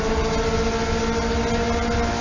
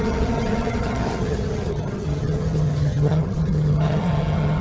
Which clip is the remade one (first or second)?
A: second